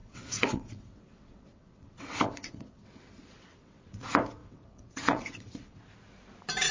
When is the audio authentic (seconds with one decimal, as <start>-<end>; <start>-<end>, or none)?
4.0-4.4; 5.8-6.7